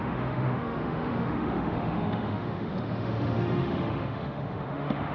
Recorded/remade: remade